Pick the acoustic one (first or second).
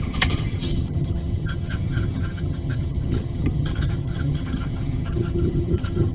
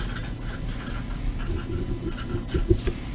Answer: second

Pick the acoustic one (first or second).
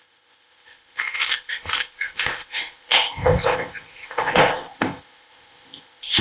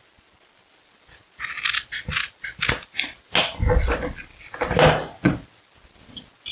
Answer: second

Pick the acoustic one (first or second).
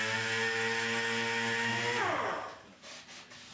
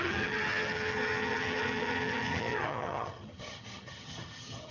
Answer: first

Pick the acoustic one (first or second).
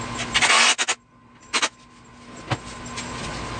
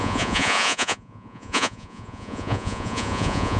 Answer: first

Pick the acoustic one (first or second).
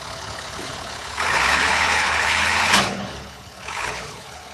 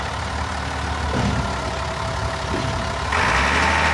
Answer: second